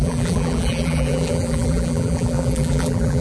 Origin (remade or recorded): remade